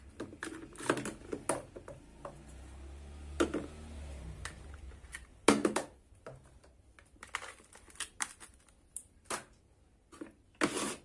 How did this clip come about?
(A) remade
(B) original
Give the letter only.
B